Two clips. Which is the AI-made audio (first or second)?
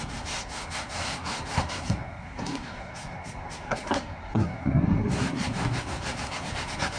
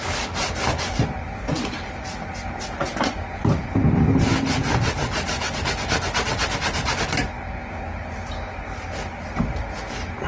first